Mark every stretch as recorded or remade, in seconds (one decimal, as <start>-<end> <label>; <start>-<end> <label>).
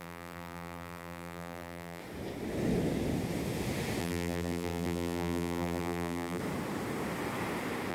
0.0-2.0 remade; 2.0-4.0 recorded; 4.0-6.4 remade; 6.4-7.9 recorded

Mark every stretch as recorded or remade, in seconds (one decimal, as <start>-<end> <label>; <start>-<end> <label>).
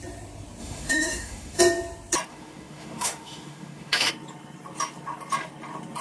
0.0-0.6 recorded; 0.6-1.6 remade; 1.6-2.3 recorded; 2.3-4.1 remade; 4.1-6.0 recorded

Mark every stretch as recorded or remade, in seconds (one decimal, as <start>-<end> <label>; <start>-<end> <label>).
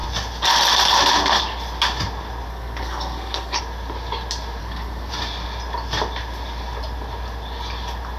0.0-2.5 recorded; 2.5-3.6 remade; 3.6-4.6 recorded; 4.6-5.1 remade; 5.1-8.2 recorded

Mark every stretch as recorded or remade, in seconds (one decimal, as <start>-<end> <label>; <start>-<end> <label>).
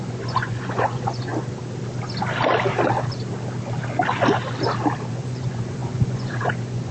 0.0-1.3 remade; 1.3-5.1 recorded; 5.1-6.9 remade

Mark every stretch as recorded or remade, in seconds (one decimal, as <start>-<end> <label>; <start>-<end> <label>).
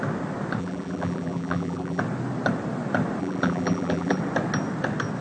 0.0-0.6 recorded; 0.6-2.0 remade; 2.0-3.2 recorded; 3.2-4.2 remade; 4.2-5.2 recorded